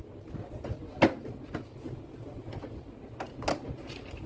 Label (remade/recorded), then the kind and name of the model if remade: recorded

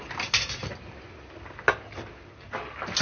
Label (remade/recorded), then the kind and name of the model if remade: recorded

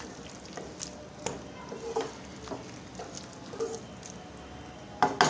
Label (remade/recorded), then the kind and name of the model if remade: recorded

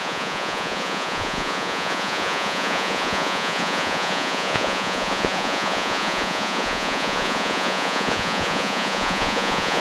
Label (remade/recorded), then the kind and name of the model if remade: remade, vocoder, Vocos